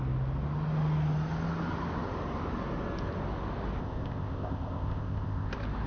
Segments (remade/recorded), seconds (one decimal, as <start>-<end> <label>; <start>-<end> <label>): 0.0-3.8 recorded; 3.8-5.5 remade; 5.5-5.9 recorded